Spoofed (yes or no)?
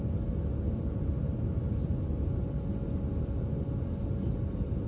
no